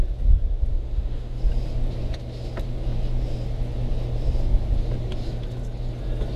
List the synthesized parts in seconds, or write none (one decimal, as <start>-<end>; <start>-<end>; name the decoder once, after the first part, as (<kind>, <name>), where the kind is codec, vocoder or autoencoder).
0.7-1.4 (autoencoder, DAC-VAE)